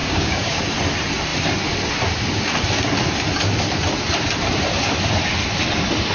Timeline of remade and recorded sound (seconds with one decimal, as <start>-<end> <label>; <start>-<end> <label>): 0.0-0.6 remade; 0.6-6.1 recorded